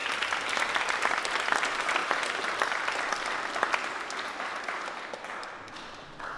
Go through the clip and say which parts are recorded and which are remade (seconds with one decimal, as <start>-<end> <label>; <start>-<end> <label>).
0.0-6.4 recorded

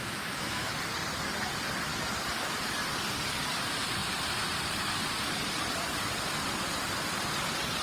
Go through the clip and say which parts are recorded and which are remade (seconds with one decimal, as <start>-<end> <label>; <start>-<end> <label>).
0.0-0.7 remade; 0.7-7.8 recorded